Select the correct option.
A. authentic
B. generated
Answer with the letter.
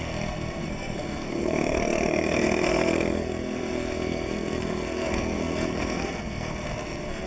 B